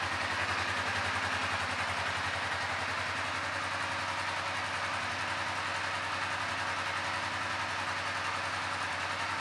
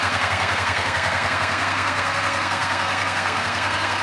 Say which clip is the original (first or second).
first